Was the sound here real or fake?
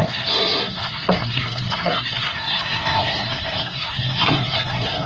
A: fake